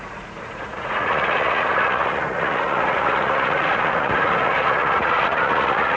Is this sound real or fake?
fake